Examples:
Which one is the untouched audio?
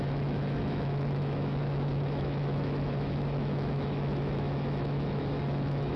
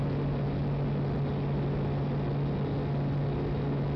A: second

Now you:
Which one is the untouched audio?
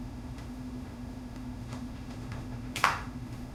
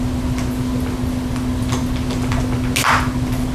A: second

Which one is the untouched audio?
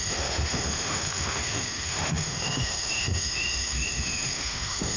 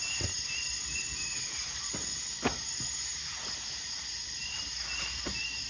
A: second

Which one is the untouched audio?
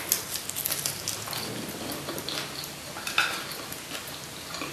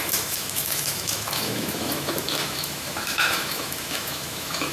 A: first